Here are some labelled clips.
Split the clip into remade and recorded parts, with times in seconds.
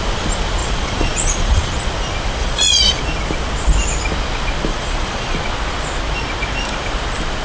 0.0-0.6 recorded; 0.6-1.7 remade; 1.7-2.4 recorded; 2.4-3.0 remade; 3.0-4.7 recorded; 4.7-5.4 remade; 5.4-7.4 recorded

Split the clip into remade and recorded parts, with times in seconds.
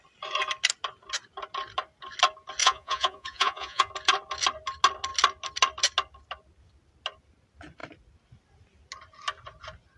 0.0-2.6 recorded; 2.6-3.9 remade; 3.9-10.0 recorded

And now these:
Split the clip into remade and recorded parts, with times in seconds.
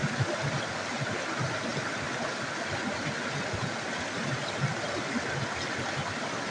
0.0-6.5 recorded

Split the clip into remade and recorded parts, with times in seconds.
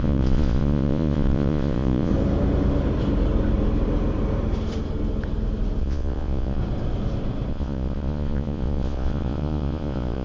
0.0-2.1 remade; 2.1-5.8 recorded; 5.8-6.6 remade; 6.6-7.5 recorded; 7.5-10.2 remade